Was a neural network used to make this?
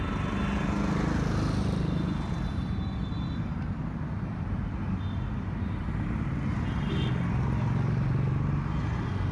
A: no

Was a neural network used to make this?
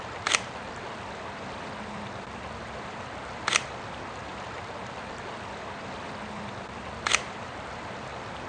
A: no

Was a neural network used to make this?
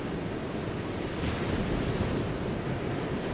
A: no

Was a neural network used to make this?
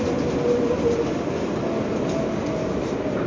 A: no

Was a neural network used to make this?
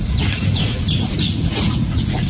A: yes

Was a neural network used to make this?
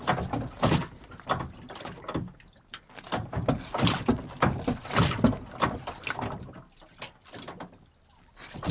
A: no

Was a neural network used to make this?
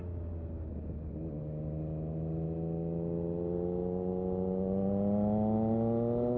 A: no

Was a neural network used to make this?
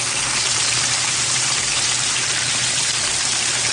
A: yes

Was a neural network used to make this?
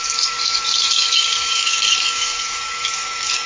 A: yes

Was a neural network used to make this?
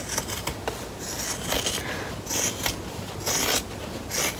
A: no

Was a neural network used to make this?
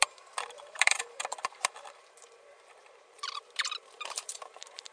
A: yes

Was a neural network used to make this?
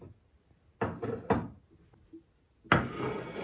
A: no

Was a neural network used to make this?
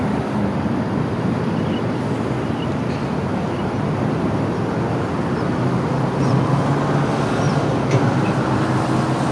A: no